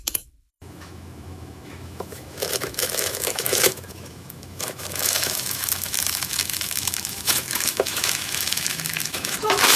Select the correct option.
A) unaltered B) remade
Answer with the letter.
B